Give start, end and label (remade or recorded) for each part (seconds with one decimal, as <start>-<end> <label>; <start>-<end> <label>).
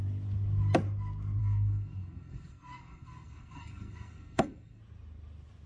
0.0-1.4 recorded; 1.4-4.8 remade; 4.8-5.7 recorded